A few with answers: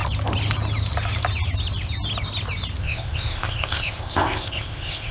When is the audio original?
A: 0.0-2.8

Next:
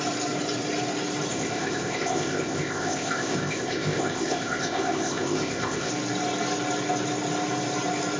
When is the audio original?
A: 0.0-1.3; 5.9-8.2

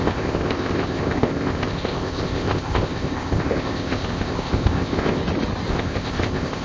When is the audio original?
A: 5.2-5.7

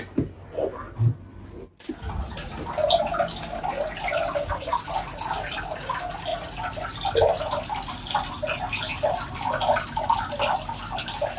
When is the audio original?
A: 0.0-11.4